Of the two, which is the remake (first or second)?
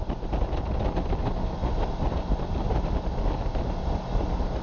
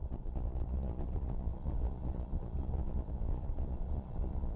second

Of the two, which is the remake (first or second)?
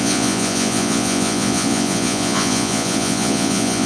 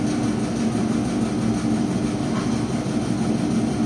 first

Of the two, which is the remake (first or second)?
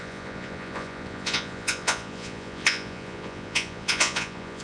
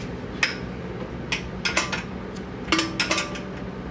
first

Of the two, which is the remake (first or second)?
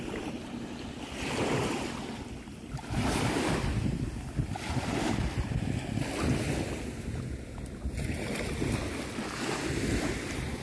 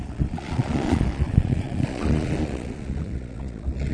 second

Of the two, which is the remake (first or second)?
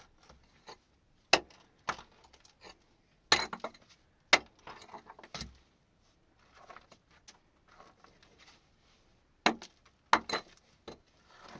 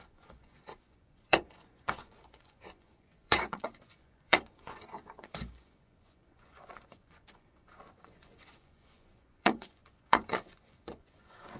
second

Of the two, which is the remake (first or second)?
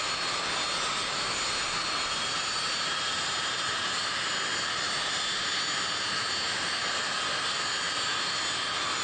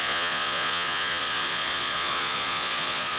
second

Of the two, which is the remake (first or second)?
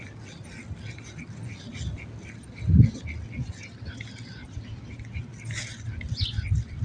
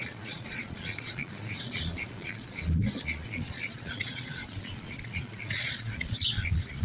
second